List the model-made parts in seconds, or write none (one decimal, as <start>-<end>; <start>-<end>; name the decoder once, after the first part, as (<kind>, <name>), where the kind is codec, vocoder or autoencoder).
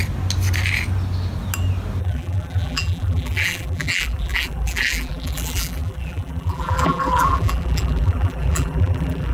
2.0-9.3 (vocoder, BigVGAN v2)